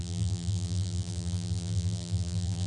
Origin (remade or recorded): remade